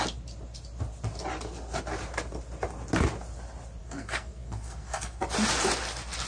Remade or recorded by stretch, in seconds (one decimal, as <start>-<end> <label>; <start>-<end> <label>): 0.0-3.8 recorded; 3.8-5.2 remade; 5.2-6.3 recorded